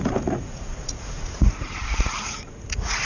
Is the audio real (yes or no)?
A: no